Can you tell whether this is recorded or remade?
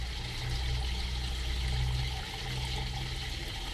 recorded